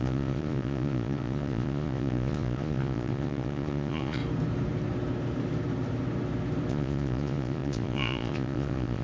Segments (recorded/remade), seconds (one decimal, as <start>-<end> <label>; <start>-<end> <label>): 0.0-4.2 remade; 4.2-6.7 recorded; 6.7-9.0 remade